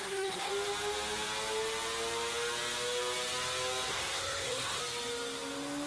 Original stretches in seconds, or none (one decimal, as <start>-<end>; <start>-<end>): 0.5-3.9; 4.8-5.9